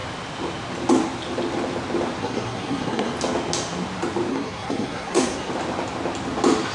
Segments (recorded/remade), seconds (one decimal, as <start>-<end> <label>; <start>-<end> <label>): 0.0-2.2 recorded; 2.2-3.1 remade; 3.1-4.3 recorded; 4.3-5.5 remade; 5.5-6.7 recorded